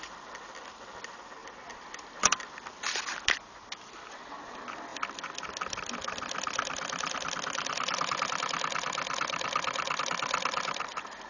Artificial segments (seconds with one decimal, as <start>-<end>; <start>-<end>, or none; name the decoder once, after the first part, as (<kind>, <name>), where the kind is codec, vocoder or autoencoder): 1.4-4.0 (vocoder, BigVGAN v2)